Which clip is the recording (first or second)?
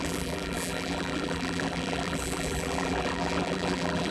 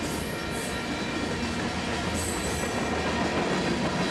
second